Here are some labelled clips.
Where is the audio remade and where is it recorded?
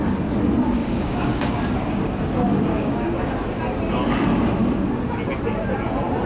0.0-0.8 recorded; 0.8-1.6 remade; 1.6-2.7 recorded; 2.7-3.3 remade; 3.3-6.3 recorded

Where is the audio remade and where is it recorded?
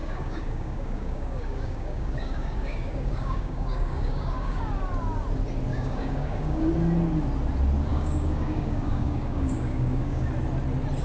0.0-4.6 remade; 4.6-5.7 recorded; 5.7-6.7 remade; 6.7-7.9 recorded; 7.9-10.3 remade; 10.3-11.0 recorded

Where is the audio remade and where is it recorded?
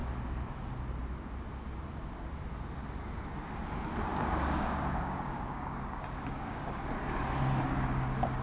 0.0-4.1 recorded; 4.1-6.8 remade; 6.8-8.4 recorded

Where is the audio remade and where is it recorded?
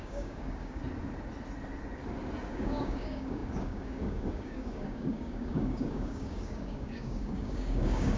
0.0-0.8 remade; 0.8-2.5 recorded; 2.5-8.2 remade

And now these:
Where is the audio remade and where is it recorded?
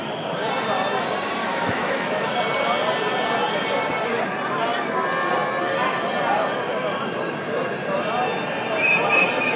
0.0-1.4 recorded; 1.4-2.3 remade; 2.3-9.6 recorded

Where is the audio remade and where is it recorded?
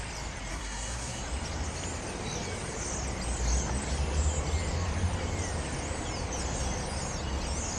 0.0-0.5 recorded; 0.5-1.2 remade; 1.2-7.8 recorded